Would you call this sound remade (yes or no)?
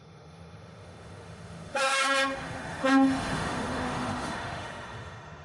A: yes